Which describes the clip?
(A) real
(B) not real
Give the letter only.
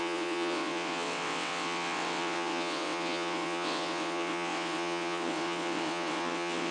B